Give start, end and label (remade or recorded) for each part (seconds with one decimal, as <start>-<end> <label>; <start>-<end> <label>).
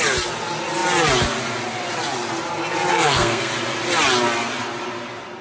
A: 0.0-2.9 recorded; 2.9-3.5 remade; 3.5-5.4 recorded